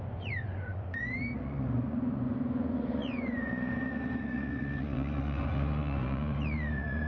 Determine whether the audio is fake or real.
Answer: fake